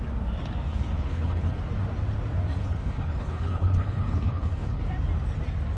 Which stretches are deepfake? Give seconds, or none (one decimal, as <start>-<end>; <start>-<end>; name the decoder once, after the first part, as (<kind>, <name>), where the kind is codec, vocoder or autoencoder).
0.7-1.6 (codec, HILCodec); 2.6-4.8